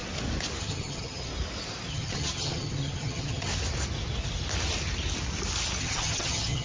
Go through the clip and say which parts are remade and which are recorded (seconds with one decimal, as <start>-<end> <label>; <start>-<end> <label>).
0.0-0.6 recorded; 0.6-1.3 remade; 1.3-1.9 recorded; 1.9-3.5 remade; 3.5-5.8 recorded; 5.8-6.6 remade